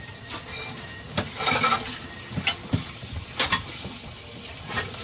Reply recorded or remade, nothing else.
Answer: recorded